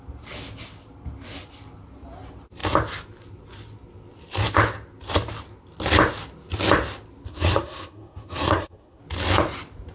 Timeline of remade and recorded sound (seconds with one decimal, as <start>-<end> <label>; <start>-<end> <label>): 0.0-7.3 recorded; 7.3-9.0 remade; 9.0-9.9 recorded